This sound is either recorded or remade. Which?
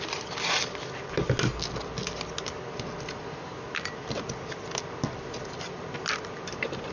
recorded